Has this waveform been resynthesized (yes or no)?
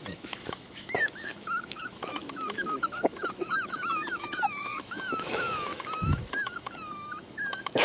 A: yes